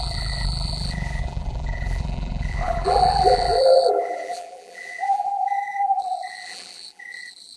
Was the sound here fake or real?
fake